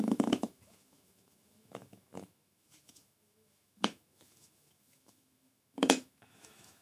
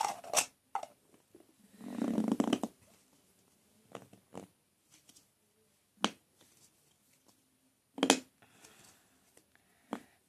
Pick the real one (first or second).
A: second